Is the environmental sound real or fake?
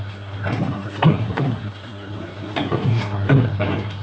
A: fake